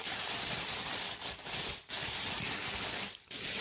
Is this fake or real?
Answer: real